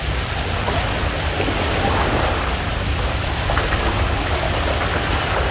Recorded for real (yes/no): yes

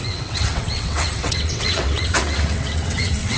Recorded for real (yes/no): no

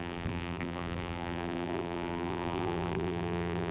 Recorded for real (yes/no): no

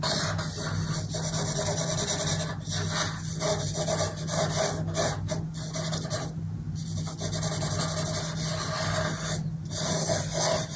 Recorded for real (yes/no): yes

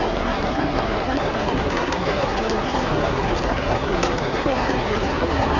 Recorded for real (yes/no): no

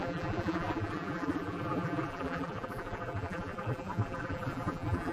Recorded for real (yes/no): no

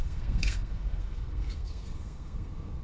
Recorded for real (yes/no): no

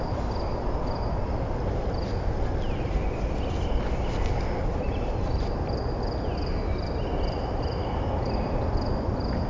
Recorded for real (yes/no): yes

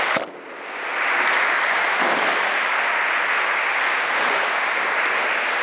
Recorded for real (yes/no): yes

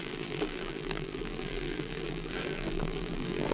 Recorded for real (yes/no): no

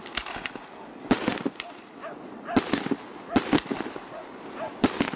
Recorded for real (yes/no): yes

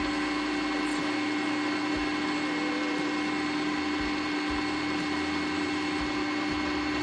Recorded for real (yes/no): yes